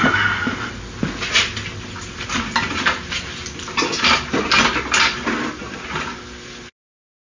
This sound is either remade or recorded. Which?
recorded